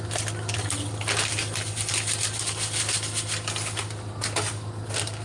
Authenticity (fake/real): real